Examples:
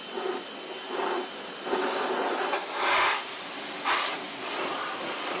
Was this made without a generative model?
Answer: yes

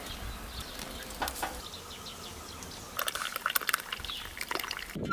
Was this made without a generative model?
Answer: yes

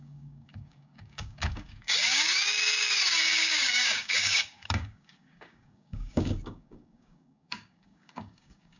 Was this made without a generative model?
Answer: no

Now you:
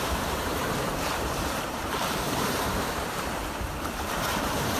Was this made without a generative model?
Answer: no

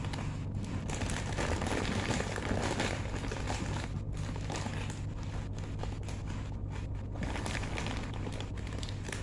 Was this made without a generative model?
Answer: yes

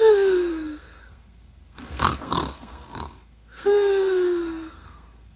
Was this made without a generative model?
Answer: no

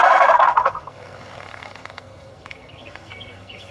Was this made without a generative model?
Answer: no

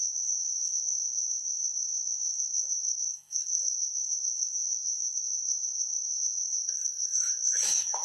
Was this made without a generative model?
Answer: no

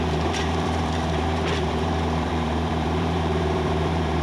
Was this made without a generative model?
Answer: no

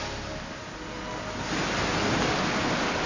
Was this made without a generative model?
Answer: yes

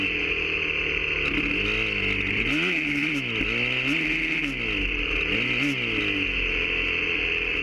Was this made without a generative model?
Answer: yes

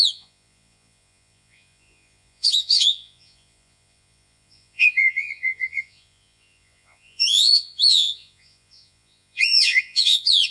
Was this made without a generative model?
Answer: no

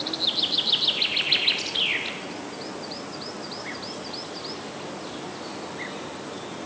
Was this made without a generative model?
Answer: yes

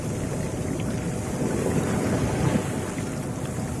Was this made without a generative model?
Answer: yes